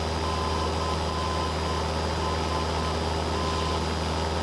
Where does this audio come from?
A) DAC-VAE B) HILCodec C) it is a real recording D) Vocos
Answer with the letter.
C